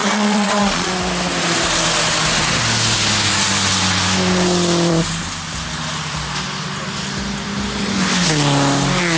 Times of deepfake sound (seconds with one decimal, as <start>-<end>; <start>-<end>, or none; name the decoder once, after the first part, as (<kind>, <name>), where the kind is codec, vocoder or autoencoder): 0.0-0.9 (vocoder, Vocos)